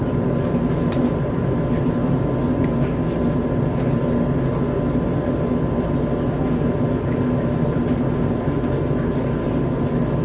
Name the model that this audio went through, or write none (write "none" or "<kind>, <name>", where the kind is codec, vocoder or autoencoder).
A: none